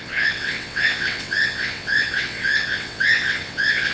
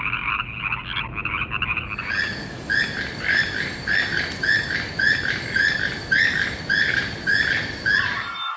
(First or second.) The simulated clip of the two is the first